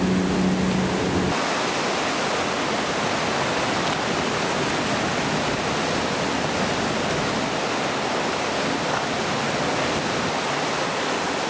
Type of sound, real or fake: real